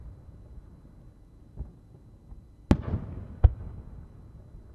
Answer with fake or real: real